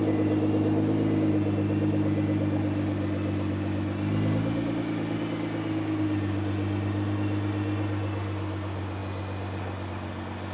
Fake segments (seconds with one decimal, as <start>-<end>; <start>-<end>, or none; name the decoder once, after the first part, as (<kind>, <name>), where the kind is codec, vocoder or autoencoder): none